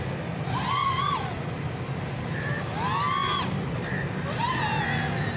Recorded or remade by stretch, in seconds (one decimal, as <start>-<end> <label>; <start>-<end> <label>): 0.0-5.4 recorded